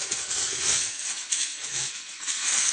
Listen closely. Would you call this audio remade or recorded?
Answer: remade